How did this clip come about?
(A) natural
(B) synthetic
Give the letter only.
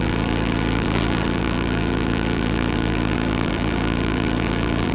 B